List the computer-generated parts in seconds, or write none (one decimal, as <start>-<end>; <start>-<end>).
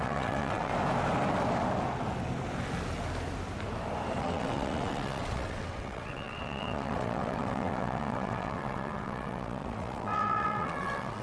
0.0-0.7; 4.2-11.2